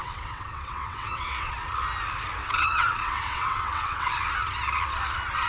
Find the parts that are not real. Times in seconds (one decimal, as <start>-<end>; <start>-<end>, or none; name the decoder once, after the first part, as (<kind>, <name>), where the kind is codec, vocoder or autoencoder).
0.0-1.5 (vocoder, WaveNeXt); 2.4-4.1